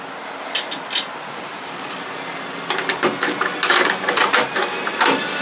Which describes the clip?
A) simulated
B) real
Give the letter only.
B